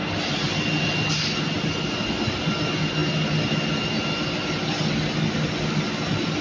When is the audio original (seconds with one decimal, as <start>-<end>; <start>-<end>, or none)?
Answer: 0.0-6.4